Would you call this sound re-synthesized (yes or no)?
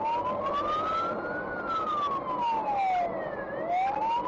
no